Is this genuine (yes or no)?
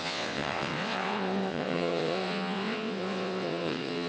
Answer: no